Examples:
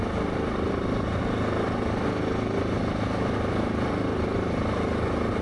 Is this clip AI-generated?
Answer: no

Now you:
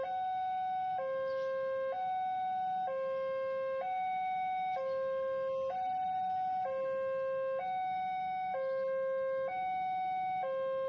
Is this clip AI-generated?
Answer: no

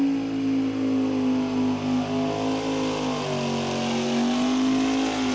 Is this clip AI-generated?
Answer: no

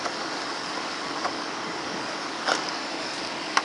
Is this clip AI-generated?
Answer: yes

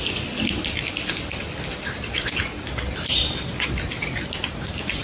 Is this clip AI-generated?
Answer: no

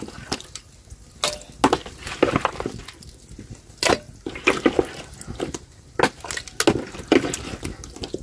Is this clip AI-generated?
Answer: no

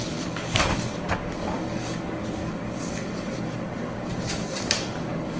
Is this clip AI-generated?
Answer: yes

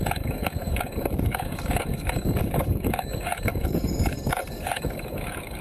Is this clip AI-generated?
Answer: yes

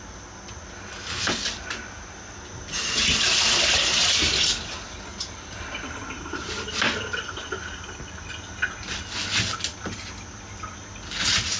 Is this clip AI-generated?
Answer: no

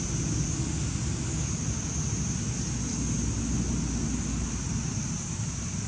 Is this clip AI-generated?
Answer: no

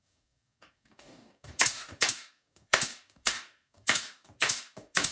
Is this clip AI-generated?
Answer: yes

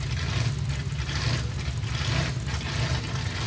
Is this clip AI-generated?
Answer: no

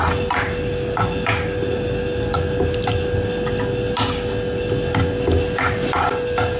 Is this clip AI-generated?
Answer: no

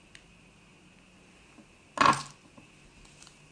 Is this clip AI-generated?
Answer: no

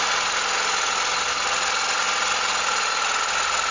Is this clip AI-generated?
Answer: no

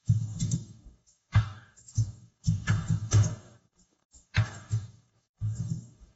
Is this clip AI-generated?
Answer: yes